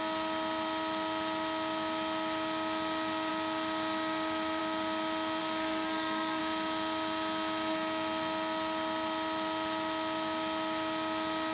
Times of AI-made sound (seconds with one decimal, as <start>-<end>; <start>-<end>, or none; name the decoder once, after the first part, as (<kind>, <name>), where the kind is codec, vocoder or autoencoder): 5.4-6.4 (codec, SNAC)